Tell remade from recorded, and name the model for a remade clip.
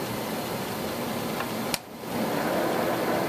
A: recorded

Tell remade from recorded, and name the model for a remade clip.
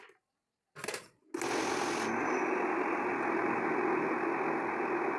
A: recorded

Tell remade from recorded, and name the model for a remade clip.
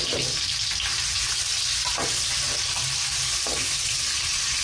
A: recorded